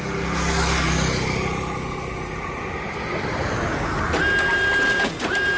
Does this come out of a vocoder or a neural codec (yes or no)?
no